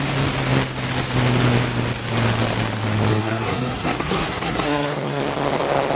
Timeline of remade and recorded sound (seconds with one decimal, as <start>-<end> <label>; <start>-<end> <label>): 0.0-3.1 recorded; 3.1-5.2 remade; 5.2-6.0 recorded

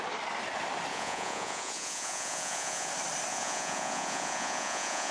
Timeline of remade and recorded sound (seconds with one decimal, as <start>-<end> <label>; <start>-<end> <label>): 0.0-0.9 recorded; 0.9-2.9 remade; 2.9-3.3 recorded; 3.3-5.1 remade